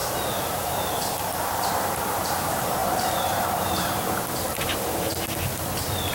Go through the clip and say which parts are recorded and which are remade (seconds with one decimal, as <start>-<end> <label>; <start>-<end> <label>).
0.0-5.1 remade; 5.1-6.1 recorded